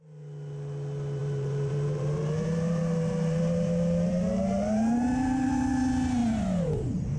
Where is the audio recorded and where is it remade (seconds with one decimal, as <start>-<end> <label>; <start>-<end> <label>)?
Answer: 0.0-1.2 recorded; 1.2-5.5 remade; 5.5-6.2 recorded; 6.2-7.2 remade